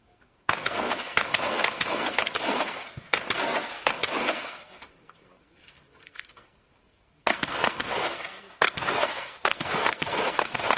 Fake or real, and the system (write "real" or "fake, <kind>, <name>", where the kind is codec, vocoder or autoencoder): fake, codec, SNAC